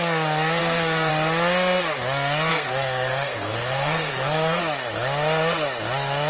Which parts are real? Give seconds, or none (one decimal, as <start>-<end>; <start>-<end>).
0.0-0.6; 1.1-2.5; 4.6-6.3

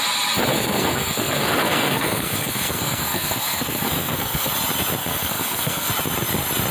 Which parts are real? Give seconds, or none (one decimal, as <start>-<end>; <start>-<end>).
0.0-0.5; 4.5-5.0; 5.9-6.7

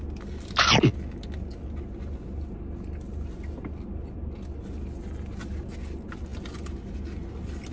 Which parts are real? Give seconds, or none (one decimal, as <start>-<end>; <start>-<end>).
0.0-7.7

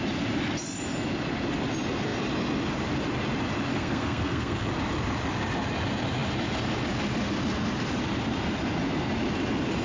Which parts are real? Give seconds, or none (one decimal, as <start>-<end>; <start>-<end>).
0.0-3.7; 4.7-9.8

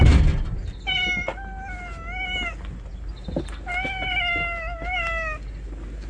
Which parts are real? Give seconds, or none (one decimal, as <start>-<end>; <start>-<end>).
0.0-6.1

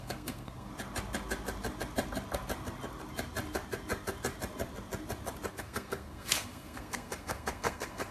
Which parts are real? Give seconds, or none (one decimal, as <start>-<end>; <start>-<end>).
0.7-5.5

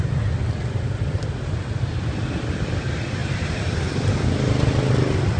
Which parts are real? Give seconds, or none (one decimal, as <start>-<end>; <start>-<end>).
0.0-5.4

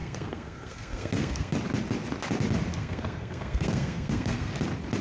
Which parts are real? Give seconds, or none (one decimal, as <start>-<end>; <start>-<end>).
1.5-2.7; 4.5-5.0